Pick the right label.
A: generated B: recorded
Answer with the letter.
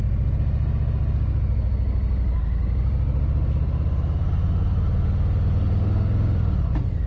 B